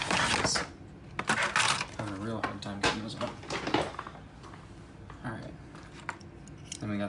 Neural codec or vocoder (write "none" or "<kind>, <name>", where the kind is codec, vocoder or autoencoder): none